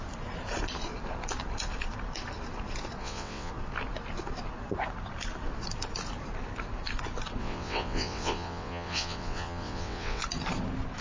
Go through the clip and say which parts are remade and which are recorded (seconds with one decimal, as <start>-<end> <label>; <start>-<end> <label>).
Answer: 0.0-3.0 recorded; 3.0-3.5 remade; 3.5-7.4 recorded; 7.4-10.2 remade; 10.2-11.0 recorded